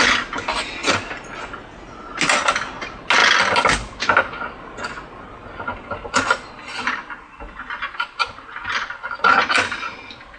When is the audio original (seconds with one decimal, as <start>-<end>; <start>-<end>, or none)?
0.0-10.4